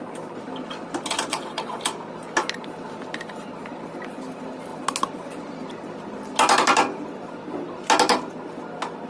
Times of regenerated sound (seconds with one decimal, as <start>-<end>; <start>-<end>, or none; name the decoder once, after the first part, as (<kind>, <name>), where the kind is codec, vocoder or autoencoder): 1.3-1.8 (vocoder, WaveNeXt)